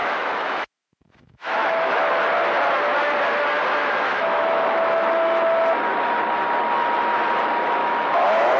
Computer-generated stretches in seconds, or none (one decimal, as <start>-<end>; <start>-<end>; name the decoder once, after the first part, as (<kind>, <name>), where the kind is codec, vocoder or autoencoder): 0.0-2.1 (autoencoder, DAC-VAE); 3.8-5.1; 7.8-8.6